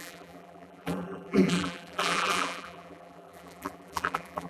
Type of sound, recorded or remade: remade